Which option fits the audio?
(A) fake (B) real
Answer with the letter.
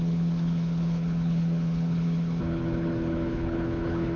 A